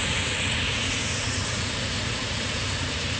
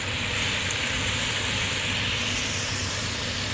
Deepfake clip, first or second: first